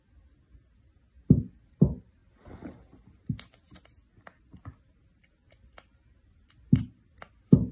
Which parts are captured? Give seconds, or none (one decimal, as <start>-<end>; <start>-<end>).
0.0-7.7